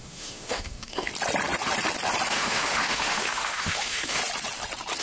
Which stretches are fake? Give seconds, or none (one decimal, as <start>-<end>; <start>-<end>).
0.0-1.1; 2.3-4.2